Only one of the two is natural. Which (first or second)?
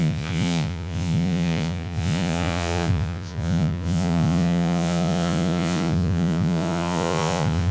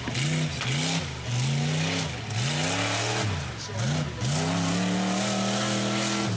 second